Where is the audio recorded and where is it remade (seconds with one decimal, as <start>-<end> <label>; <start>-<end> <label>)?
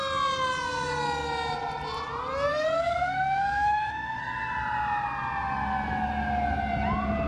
0.0-2.5 recorded; 2.5-4.2 remade; 4.2-7.3 recorded